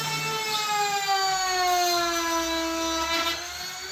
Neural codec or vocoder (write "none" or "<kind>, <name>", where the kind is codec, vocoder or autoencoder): none